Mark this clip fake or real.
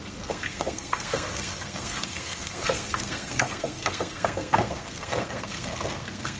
fake